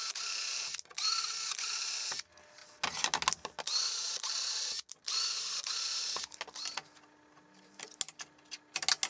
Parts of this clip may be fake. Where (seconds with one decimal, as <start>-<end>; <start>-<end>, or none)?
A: none